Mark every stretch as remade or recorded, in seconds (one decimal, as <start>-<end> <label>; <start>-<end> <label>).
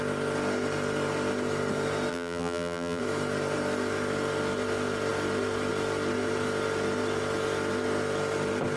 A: 0.0-2.1 recorded; 2.1-3.0 remade; 3.0-8.8 recorded